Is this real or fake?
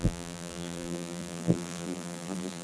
fake